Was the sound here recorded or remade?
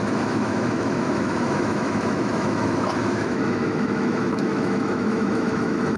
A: remade